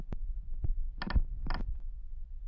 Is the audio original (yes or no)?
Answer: yes